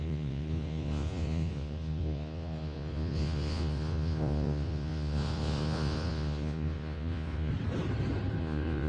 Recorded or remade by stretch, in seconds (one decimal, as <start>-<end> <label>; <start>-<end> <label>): 0.0-7.5 remade; 7.5-8.4 recorded; 8.4-8.9 remade